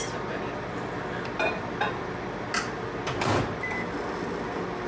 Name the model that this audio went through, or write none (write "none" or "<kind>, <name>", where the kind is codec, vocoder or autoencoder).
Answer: none